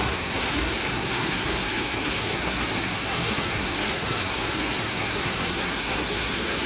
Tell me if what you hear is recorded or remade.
remade